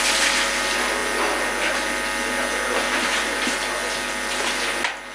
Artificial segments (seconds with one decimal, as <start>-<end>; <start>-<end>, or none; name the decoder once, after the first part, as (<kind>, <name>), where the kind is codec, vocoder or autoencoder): none